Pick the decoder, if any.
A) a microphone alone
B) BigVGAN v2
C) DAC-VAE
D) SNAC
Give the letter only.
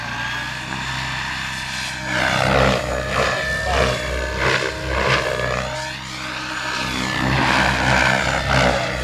A